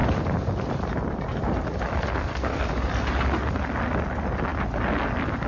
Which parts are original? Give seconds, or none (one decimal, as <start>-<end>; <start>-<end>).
0.0-1.9; 2.7-5.5

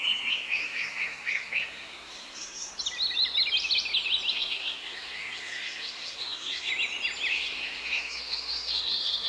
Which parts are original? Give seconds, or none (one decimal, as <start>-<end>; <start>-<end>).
2.7-4.3; 6.7-7.3

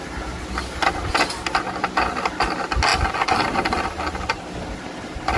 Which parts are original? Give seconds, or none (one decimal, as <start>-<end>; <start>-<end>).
0.0-5.4

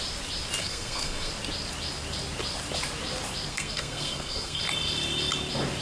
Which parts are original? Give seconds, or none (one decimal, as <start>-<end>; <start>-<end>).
0.0-0.6; 1.3-3.5; 4.6-5.8

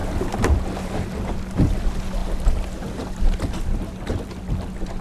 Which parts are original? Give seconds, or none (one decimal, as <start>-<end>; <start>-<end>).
0.0-5.0

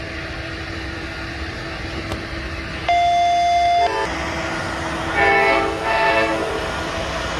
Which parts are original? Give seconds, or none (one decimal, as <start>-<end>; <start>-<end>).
0.0-5.3; 6.5-7.4

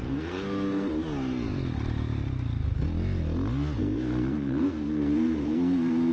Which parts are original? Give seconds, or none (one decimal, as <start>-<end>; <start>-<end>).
0.9-3.8

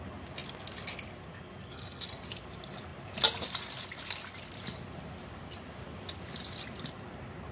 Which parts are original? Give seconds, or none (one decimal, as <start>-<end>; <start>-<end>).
0.0-1.6; 2.2-7.5